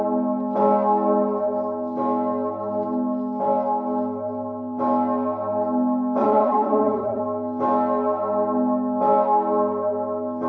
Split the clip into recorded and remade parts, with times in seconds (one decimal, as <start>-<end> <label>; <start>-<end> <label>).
0.0-6.2 recorded; 6.2-7.2 remade; 7.2-10.5 recorded